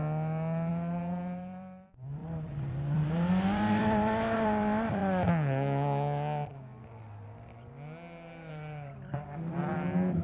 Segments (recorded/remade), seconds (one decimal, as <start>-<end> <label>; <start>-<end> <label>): 0.0-0.7 recorded; 0.7-5.0 remade; 5.0-8.5 recorded; 8.5-10.2 remade